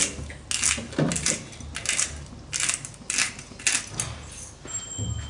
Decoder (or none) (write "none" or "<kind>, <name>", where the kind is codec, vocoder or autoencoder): none